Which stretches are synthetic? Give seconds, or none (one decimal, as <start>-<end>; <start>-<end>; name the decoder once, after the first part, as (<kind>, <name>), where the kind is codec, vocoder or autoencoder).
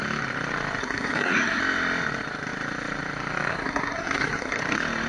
0.8-1.6 (codec, SNAC); 3.5-4.6